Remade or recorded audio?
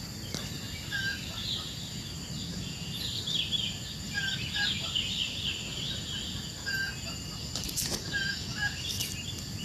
recorded